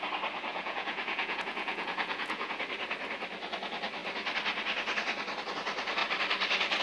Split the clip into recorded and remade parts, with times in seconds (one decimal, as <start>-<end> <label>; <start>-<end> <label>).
0.0-0.5 recorded; 0.5-2.6 remade; 2.6-6.8 recorded

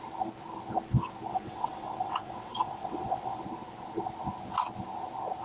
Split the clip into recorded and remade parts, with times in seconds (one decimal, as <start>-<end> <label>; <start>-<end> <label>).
0.0-1.3 recorded; 1.3-3.4 remade; 3.4-5.4 recorded

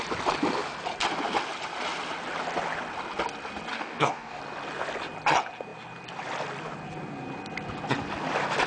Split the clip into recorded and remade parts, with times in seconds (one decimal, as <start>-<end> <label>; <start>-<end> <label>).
0.0-3.7 recorded; 3.7-4.4 remade; 4.4-8.7 recorded

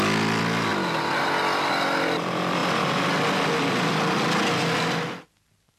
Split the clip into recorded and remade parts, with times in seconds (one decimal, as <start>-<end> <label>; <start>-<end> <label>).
0.0-5.8 recorded

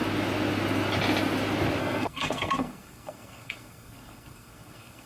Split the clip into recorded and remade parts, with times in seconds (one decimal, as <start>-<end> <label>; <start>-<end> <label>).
0.0-1.8 recorded; 1.8-5.1 remade

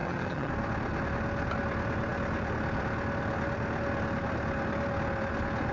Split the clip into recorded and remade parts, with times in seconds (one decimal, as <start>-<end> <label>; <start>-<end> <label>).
0.0-0.5 remade; 0.5-5.7 recorded

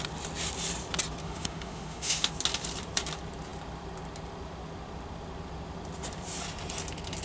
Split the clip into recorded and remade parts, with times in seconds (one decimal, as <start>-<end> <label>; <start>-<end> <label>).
0.0-1.2 recorded; 1.2-2.3 remade; 2.3-7.2 recorded